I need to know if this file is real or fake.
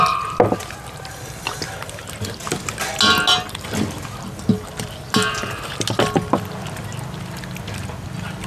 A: real